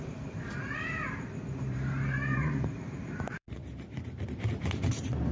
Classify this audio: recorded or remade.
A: remade